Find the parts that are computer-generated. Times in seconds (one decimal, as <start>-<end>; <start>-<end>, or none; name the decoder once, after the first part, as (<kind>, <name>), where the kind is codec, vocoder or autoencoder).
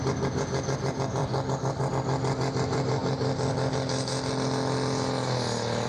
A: none